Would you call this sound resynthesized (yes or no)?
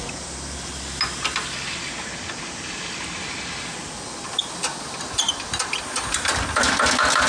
no